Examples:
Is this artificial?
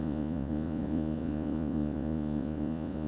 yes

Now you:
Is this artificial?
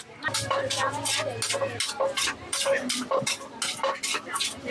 no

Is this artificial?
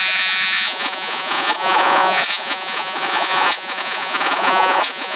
yes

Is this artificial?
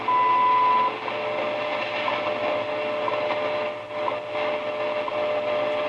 no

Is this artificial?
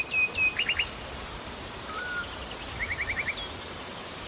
no